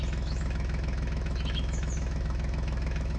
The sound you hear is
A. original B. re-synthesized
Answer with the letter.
B